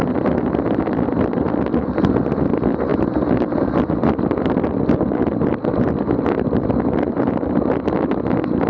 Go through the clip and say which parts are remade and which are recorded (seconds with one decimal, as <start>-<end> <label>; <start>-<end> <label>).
0.0-8.7 recorded